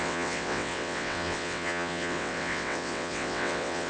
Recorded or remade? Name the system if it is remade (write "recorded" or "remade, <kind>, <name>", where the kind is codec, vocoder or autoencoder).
remade, vocoder, WaveNeXt